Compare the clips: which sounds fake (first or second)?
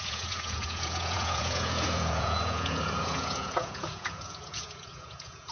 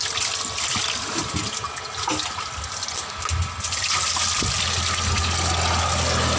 first